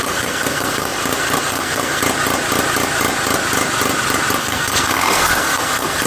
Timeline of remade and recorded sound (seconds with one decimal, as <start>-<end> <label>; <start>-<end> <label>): 0.0-2.0 remade; 2.0-4.4 recorded; 4.4-6.1 remade